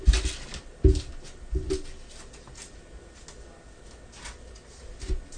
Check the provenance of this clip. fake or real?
real